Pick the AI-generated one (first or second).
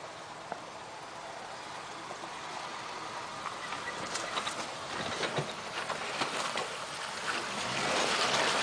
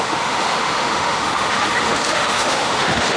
second